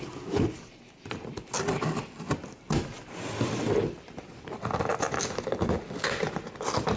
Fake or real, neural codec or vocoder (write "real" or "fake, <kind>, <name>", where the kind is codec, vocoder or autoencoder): real